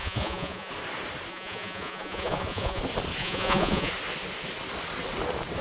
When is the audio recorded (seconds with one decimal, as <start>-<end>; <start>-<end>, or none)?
0.7-1.3; 2.8-3.2; 3.9-5.6